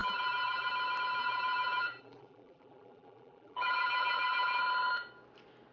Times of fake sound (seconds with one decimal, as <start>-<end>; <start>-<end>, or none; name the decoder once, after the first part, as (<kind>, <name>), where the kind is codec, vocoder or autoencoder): 0.0-0.7 (vocoder, BigVGAN v2); 1.2-4.6